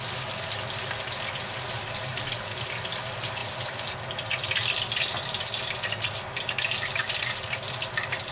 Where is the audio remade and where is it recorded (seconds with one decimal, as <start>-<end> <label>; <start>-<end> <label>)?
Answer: 0.0-8.3 recorded